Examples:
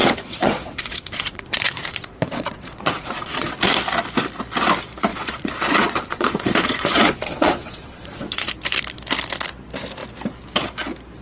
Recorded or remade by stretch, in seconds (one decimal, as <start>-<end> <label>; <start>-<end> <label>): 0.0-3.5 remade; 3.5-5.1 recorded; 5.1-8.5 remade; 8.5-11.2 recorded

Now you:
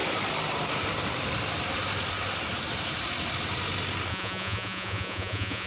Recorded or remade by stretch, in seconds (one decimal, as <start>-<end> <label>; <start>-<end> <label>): 0.0-4.1 recorded; 4.1-5.7 remade

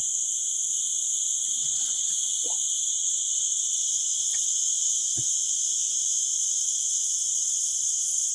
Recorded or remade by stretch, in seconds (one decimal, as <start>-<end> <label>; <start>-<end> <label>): 0.0-1.6 recorded; 1.6-2.1 remade; 2.1-2.9 recorded; 2.9-4.9 remade; 4.9-6.3 recorded; 6.3-8.3 remade

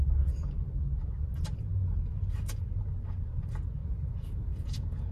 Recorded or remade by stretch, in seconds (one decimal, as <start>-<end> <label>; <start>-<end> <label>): 0.0-3.8 recorded; 3.8-5.1 remade

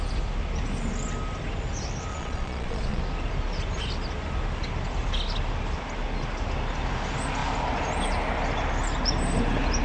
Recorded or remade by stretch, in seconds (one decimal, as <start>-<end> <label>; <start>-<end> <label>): 0.0-2.1 recorded; 2.1-3.0 remade; 3.0-9.8 recorded

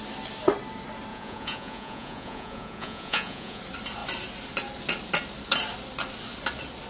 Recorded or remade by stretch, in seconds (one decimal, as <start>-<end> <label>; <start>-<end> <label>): 0.0-1.1 recorded; 1.1-3.6 remade; 3.6-6.9 recorded

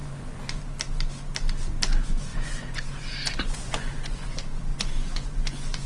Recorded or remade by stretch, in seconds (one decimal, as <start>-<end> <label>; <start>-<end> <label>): 0.0-0.6 remade; 0.6-2.3 recorded; 2.3-4.3 remade; 4.3-4.7 recorded; 4.7-5.9 remade

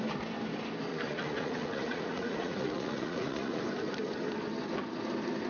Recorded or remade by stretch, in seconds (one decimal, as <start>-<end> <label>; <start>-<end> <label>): 0.0-0.9 recorded; 0.9-3.6 remade; 3.6-5.5 recorded